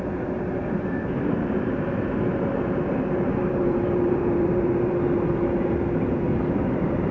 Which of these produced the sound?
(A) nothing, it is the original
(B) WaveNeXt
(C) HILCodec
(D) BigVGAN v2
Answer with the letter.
D